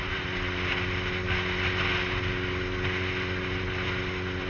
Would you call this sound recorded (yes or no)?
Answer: yes